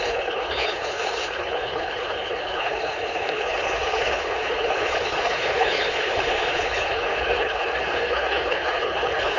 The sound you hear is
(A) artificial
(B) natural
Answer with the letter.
A